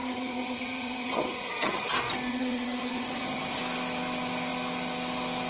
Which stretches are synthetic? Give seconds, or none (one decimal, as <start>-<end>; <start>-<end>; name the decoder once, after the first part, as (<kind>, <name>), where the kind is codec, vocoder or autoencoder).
0.0-1.9 (vocoder, HiFi-GAN); 2.3-3.6